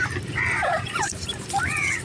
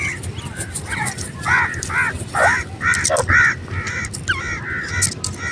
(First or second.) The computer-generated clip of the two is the first